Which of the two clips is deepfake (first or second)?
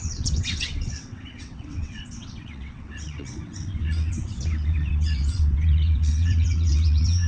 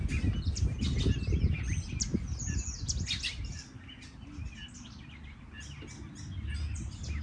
first